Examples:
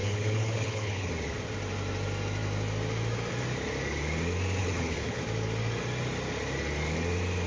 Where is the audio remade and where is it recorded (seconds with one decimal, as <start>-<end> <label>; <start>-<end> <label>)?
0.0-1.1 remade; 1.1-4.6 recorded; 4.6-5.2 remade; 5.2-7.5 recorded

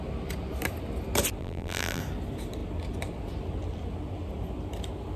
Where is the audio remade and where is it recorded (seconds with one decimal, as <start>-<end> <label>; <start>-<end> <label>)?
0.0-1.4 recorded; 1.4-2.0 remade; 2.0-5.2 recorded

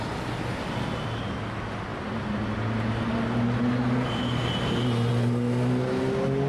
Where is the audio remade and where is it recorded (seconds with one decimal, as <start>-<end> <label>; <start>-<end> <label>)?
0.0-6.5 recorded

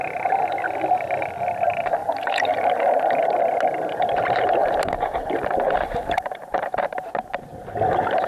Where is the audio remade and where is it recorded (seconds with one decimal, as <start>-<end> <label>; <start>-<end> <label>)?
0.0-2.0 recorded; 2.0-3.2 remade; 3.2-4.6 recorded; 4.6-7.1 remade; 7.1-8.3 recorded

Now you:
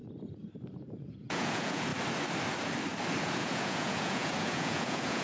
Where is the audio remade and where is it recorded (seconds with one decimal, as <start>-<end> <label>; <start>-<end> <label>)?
0.0-0.8 recorded; 0.8-1.9 remade; 1.9-3.2 recorded; 3.2-5.2 remade

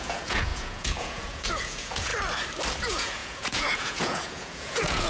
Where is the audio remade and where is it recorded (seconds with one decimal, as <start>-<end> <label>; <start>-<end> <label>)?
0.0-2.1 remade; 2.1-2.8 recorded; 2.8-5.1 remade